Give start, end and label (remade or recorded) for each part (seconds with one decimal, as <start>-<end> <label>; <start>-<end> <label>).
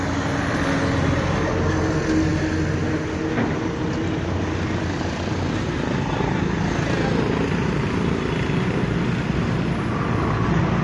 0.0-10.8 recorded